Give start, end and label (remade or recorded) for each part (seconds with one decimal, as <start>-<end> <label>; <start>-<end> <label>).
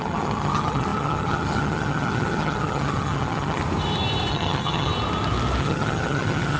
0.0-3.6 remade; 3.6-4.3 recorded; 4.3-4.9 remade; 4.9-5.6 recorded; 5.6-6.6 remade